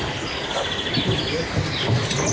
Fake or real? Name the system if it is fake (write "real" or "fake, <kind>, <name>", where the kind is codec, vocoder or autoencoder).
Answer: real